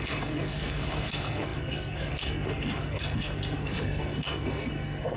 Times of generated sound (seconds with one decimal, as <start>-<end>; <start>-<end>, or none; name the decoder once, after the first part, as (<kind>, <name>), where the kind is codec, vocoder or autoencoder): 0.0-5.2 (codec, SNAC)